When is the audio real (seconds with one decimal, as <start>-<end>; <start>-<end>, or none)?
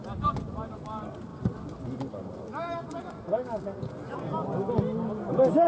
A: 0.0-5.7